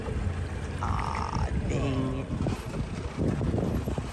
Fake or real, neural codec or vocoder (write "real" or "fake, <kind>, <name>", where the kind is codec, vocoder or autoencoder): real